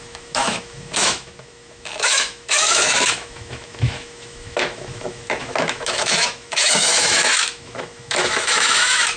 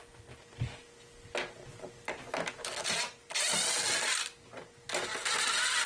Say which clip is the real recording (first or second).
second